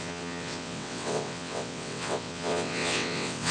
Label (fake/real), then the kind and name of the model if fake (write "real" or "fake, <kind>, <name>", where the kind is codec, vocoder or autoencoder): fake, vocoder, WaveNeXt